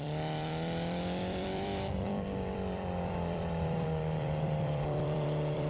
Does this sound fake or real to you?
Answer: fake